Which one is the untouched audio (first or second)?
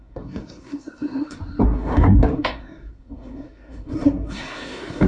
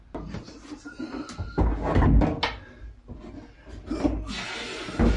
second